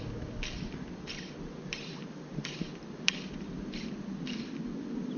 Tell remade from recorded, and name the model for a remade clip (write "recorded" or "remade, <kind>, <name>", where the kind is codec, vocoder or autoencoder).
recorded